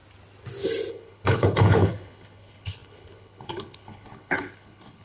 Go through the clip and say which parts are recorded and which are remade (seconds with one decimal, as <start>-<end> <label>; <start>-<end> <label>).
0.0-0.9 recorded; 0.9-5.0 remade